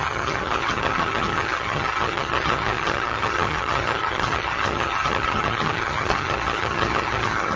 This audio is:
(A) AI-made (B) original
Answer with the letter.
A